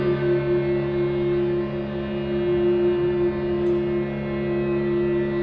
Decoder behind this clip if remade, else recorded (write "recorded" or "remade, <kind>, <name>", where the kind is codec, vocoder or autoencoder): recorded